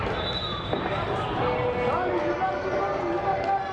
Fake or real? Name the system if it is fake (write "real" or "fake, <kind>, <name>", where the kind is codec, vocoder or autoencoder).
real